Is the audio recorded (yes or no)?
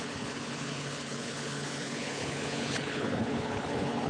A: no